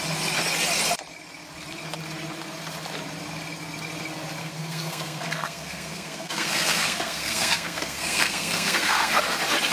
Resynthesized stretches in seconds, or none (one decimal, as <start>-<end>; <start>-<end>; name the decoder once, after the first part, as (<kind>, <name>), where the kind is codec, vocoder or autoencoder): 4.4-9.2 (codec, SNAC)